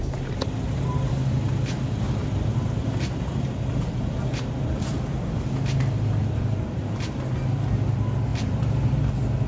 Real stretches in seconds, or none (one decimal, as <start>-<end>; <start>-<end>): 0.0-2.2; 5.1-6.2; 7.6-8.3; 9.1-9.5